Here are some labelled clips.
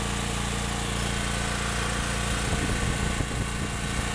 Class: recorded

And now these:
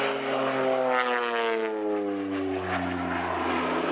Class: recorded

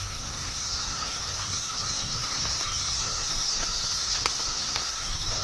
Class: remade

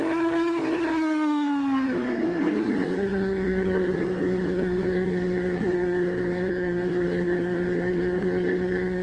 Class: remade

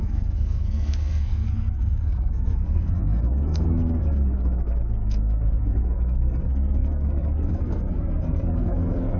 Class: remade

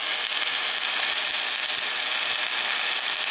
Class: recorded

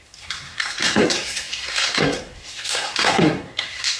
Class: remade